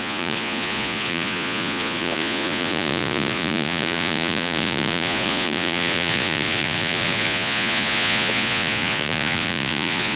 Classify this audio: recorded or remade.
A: remade